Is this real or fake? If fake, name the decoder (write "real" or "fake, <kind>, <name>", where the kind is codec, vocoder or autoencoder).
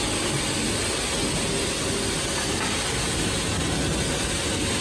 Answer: real